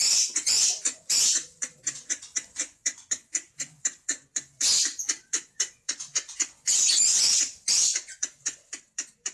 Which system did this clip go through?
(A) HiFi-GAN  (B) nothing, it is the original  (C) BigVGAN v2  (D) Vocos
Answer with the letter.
D